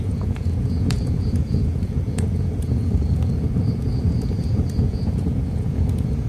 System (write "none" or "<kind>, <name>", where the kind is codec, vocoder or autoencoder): vocoder, Vocos